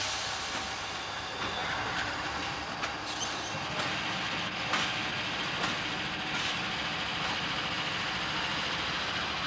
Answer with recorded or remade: recorded